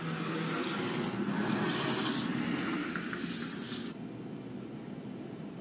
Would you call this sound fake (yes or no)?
no